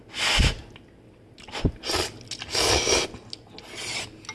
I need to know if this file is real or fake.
real